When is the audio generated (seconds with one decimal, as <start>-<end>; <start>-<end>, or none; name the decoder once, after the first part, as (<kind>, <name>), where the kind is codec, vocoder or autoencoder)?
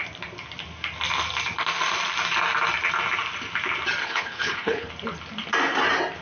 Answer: 4.0-4.9 (codec, HILCodec)